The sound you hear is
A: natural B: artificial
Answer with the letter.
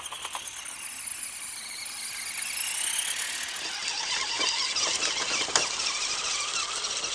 A